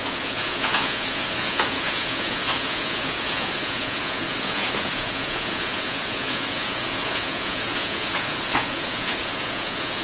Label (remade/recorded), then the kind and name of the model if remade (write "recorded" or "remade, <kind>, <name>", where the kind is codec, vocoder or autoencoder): remade, vocoder, Vocos